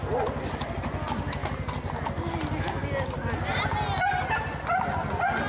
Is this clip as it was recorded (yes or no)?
yes